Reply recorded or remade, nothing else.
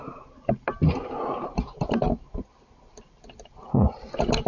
recorded